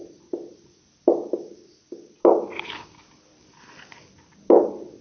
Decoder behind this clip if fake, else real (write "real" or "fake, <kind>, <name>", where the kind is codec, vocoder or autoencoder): real